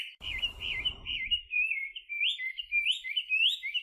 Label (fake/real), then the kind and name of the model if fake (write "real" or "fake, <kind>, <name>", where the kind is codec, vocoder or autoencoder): fake, vocoder, BigVGAN v2